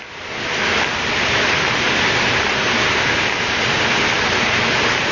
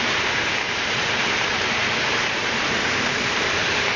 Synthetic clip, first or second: second